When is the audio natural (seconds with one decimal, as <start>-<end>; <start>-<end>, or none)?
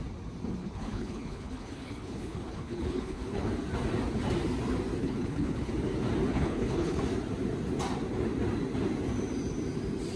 0.0-0.6; 3.5-5.0; 5.7-6.3; 7.0-10.2